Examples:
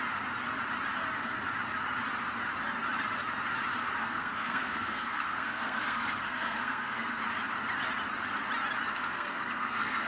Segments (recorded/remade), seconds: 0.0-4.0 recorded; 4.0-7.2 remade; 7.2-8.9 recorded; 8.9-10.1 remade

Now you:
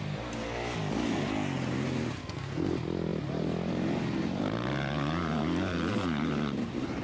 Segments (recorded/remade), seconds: 0.0-2.2 recorded; 2.2-2.7 remade; 2.7-7.0 recorded

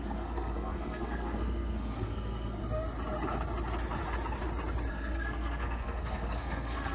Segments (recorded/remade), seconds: 0.0-2.6 remade; 2.6-4.9 recorded; 4.9-6.9 remade